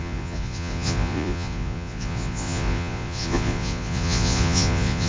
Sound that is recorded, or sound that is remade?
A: remade